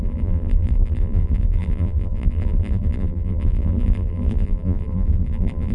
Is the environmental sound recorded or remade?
remade